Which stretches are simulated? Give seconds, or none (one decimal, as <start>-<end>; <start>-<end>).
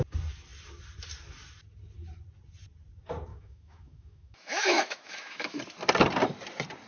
3.3-5.6